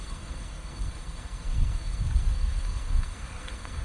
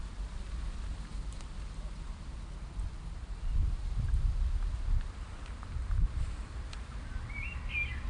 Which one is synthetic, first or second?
first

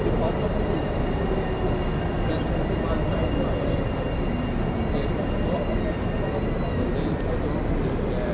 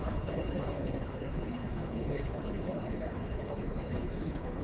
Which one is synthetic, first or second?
second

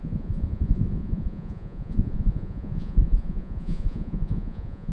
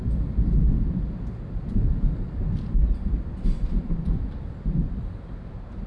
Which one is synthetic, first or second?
first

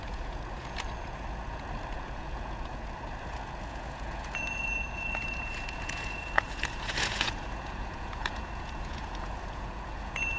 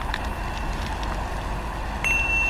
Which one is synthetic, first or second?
first